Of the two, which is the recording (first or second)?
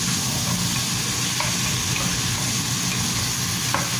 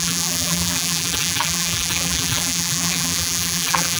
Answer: first